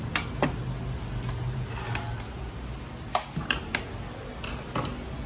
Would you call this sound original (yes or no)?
yes